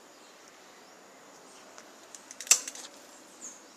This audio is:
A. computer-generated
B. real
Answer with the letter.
B